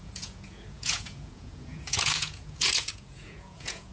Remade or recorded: remade